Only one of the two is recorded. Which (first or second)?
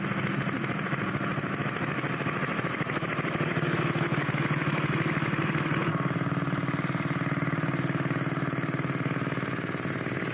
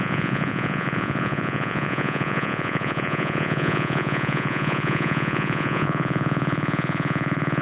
first